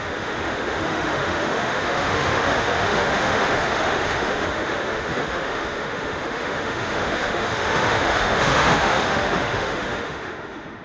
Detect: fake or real fake